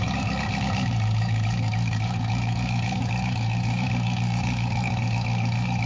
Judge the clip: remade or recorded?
remade